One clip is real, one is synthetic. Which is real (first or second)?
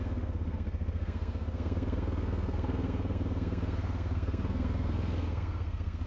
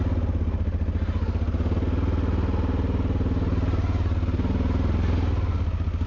second